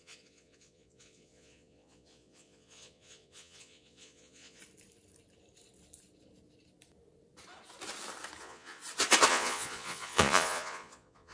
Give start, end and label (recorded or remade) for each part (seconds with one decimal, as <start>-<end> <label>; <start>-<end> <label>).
0.0-4.6 remade; 4.6-8.4 recorded; 8.4-8.8 remade; 8.8-9.3 recorded; 9.3-11.3 remade